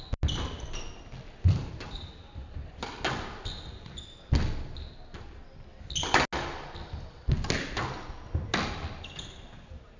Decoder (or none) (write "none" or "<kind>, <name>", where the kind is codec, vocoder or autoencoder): none